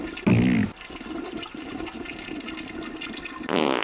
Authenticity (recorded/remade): recorded